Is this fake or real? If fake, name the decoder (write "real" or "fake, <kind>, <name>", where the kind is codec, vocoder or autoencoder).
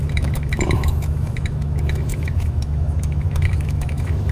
fake, autoencoder, DAC-VAE